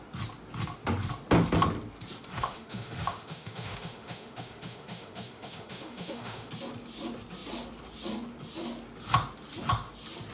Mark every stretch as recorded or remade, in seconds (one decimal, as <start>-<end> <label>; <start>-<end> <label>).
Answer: 0.0-2.3 recorded; 2.3-6.5 remade; 6.5-10.3 recorded